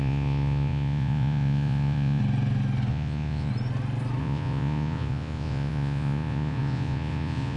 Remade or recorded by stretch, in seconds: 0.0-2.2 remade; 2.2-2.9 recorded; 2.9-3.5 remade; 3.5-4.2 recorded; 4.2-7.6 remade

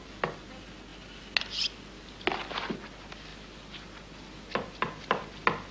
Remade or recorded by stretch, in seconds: 0.0-5.7 recorded

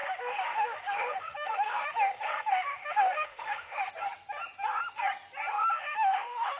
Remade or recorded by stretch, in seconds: 0.0-3.9 remade; 3.9-5.5 recorded; 5.5-6.6 remade

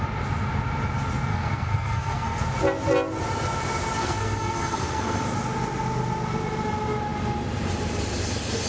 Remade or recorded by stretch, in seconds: 0.0-1.3 recorded; 1.3-2.4 remade; 2.4-4.0 recorded; 4.0-5.2 remade; 5.2-8.7 recorded

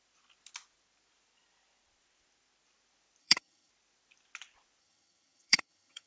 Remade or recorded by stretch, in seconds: 0.0-3.2 recorded; 3.2-3.7 remade; 3.7-4.8 recorded; 4.8-6.1 remade

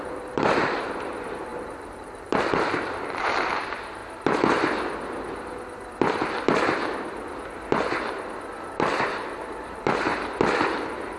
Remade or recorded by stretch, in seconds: 0.0-4.0 remade; 4.0-8.7 recorded; 8.7-10.1 remade; 10.1-11.2 recorded

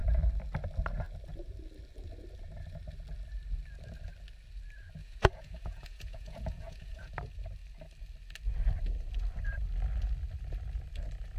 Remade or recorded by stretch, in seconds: 0.0-5.0 recorded; 5.0-7.1 remade; 7.1-11.4 recorded

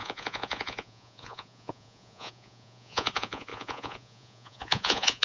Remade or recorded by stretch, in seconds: 0.0-5.2 remade